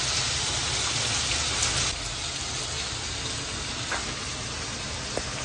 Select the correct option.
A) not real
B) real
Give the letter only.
B